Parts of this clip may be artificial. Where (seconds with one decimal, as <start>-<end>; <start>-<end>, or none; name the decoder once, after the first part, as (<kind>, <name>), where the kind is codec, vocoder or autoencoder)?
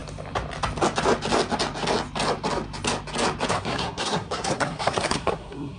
3.5-5.8 (codec, SNAC)